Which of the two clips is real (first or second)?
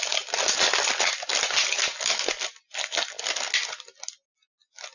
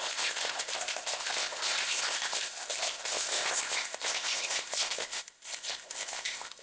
first